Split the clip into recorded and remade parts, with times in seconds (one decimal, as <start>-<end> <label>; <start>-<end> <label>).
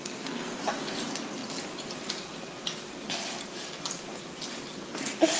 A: 0.0-0.6 remade; 0.6-5.4 recorded